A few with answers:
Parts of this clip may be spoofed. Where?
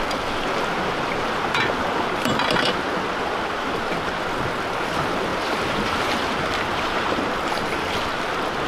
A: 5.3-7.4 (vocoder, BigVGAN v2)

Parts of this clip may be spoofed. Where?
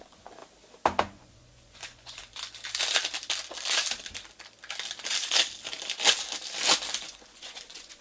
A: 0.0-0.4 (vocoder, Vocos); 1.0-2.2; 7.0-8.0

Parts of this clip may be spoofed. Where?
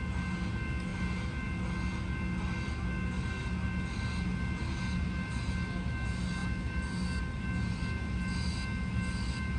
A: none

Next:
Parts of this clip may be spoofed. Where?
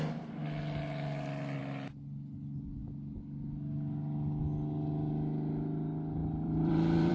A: 6.2-7.1 (vocoder, BigVGAN v2)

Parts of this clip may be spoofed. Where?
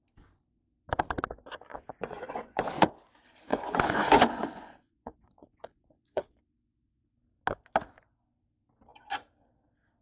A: 1.7-2.9 (vocoder, Vocos); 3.5-6.4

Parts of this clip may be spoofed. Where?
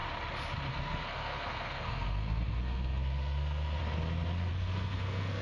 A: 0.7-3.8 (codec, SNAC); 4.5-5.4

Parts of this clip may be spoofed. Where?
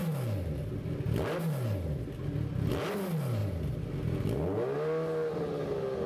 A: none